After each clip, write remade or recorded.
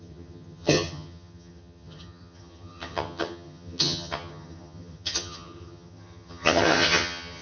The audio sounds remade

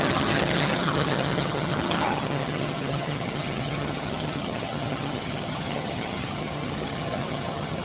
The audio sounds remade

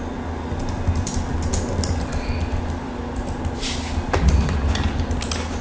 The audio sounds recorded